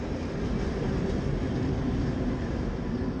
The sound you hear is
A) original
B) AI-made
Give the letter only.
A